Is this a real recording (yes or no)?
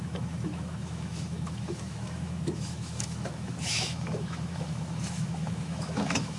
no